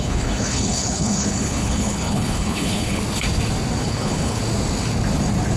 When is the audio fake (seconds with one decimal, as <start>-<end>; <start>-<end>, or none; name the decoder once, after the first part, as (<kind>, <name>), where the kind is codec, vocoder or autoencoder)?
0.0-3.0 (codec, HILCodec); 3.8-4.4